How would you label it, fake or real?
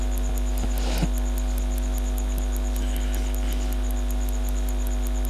real